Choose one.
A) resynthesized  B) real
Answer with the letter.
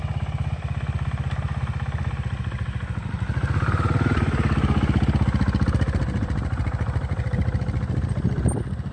B